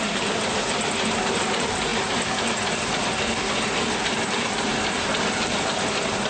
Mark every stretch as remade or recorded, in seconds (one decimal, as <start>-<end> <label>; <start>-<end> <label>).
0.0-6.3 recorded